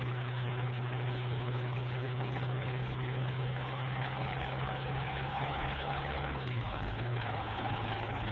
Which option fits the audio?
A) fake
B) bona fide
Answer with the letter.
A